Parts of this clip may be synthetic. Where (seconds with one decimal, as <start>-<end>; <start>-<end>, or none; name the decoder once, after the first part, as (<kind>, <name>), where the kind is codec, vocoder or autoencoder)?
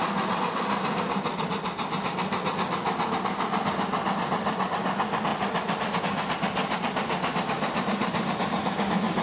6.6-8.6 (vocoder, BigVGAN v2)